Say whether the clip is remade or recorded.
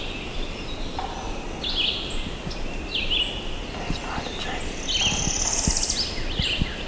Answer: recorded